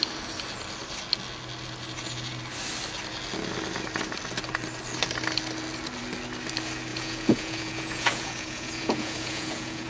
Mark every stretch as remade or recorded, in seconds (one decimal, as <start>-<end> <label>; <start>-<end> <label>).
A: 0.0-6.9 recorded; 6.9-9.9 remade